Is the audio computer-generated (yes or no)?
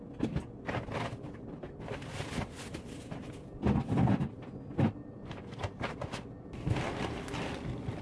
no